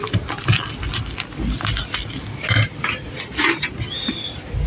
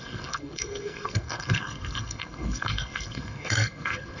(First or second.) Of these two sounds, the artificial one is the second